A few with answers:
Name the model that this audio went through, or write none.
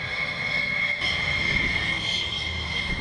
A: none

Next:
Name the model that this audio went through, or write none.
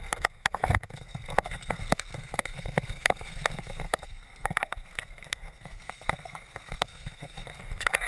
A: codec, SNAC